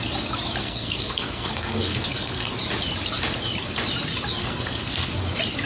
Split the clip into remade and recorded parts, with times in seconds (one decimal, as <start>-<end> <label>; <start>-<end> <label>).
0.0-0.6 recorded; 0.6-2.5 remade; 2.5-4.4 recorded; 4.4-5.1 remade; 5.1-5.6 recorded